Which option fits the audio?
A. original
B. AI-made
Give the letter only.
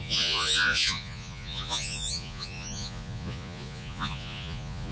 B